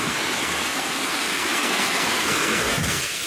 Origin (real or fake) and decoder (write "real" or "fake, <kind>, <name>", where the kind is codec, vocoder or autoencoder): fake, codec, SNAC